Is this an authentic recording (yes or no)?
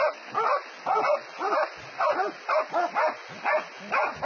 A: yes